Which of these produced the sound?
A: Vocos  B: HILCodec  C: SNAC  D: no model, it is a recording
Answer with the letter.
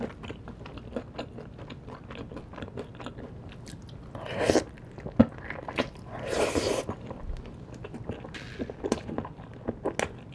D